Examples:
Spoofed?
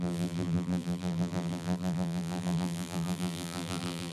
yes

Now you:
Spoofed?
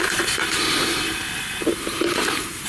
yes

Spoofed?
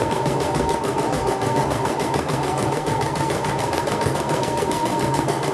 yes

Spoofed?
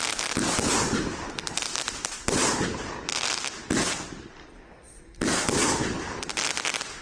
no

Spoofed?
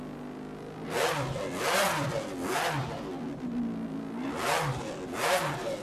no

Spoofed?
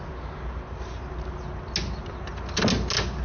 no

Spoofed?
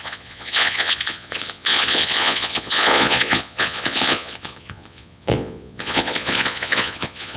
yes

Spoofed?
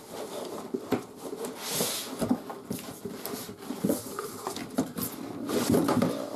no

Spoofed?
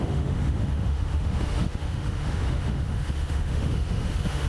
yes